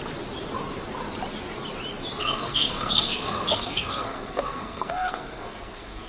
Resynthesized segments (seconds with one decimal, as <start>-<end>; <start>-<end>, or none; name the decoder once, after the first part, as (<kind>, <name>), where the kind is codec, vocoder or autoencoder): 2.2-6.1 (codec, SNAC)